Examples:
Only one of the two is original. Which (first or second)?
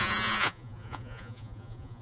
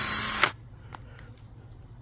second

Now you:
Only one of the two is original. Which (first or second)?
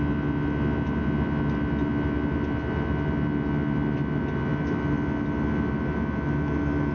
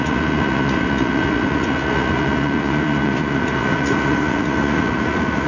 first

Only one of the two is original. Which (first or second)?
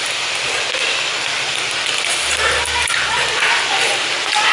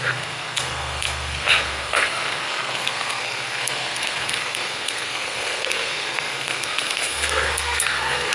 first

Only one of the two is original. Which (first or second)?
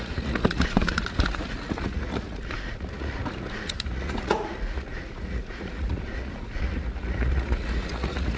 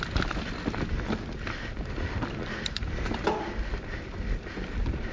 second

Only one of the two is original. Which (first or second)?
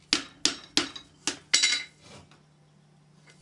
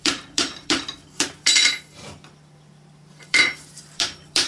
first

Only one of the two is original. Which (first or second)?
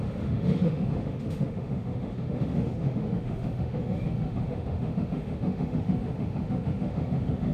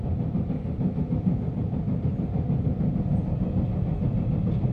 second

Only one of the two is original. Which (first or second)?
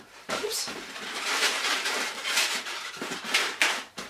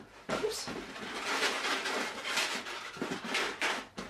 second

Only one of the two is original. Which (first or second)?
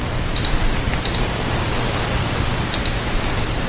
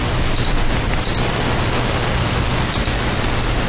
second